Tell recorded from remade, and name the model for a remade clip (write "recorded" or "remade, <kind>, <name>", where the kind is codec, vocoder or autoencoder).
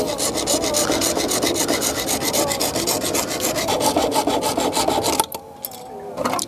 recorded